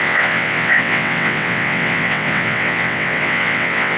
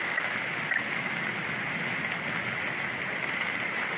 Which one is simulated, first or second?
first